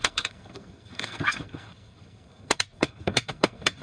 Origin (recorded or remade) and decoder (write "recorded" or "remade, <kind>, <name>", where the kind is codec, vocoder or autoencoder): remade, codec, SNAC